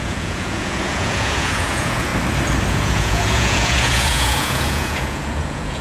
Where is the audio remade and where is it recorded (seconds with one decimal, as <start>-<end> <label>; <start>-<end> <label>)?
0.0-2.1 remade; 2.1-2.7 recorded; 2.7-5.8 remade